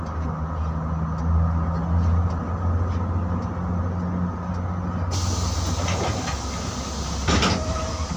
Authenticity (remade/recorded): recorded